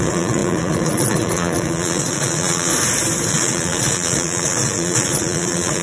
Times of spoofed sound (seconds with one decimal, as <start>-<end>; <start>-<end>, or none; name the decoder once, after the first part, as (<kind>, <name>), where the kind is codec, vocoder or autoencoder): 0.0-2.7 (vocoder, Vocos); 3.3-5.8